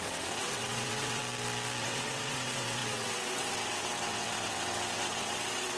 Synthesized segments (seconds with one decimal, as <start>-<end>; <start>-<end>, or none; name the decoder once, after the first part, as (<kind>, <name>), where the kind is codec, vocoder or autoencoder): 0.0-1.2 (vocoder, WaveNeXt); 1.8-5.8